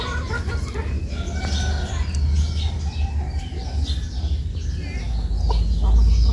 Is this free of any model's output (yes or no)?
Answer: yes